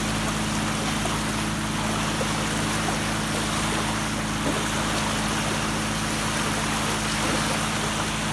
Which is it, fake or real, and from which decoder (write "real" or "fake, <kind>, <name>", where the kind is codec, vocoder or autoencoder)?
real